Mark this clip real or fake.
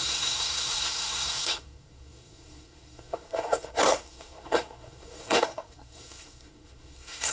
fake